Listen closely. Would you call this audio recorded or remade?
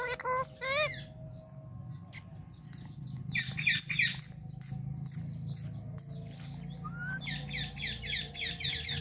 recorded